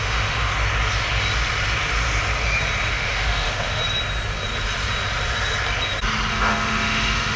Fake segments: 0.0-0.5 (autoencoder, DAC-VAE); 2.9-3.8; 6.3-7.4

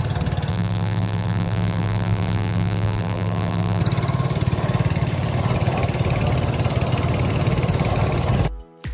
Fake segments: 0.5-3.8 (vocoder, BigVGAN v2)

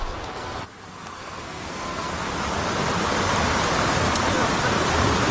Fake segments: 0.0-2.1 (codec, SNAC)